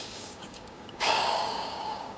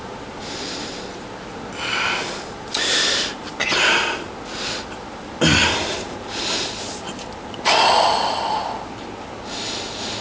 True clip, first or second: second